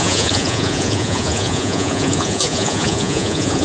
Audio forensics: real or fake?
fake